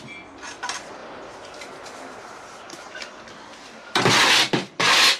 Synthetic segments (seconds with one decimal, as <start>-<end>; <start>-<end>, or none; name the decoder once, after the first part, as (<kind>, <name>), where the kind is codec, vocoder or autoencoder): none

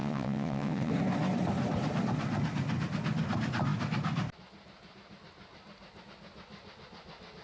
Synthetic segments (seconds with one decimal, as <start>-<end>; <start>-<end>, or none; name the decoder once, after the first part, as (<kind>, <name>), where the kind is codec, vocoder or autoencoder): 0.0-0.9 (vocoder, WaveNeXt)

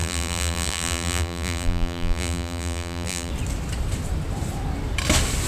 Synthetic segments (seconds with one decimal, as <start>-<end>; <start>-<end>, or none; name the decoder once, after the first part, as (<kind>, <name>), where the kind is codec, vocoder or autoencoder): 0.0-3.3 (vocoder, BigVGAN v2)

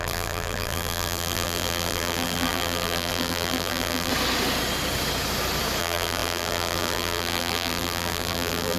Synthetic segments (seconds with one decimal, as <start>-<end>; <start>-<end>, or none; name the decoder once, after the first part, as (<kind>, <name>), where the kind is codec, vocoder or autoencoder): 0.0-4.1 (vocoder, BigVGAN v2); 5.8-8.8